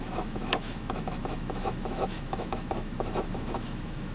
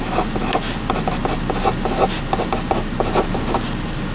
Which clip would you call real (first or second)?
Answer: second